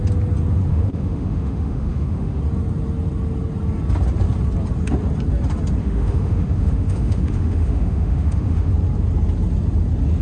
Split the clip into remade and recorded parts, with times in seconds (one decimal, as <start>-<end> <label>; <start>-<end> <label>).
0.0-0.7 recorded; 0.7-2.4 remade; 2.4-5.8 recorded; 5.8-8.7 remade; 8.7-10.2 recorded